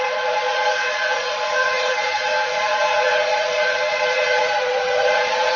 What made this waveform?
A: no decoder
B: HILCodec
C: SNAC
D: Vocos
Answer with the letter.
D